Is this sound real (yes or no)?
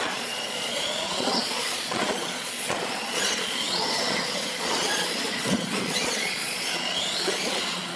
no